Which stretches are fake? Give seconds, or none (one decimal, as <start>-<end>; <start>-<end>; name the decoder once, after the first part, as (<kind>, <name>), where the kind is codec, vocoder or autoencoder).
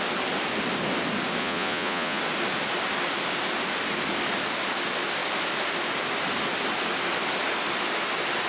1.4-2.2 (vocoder, Vocos)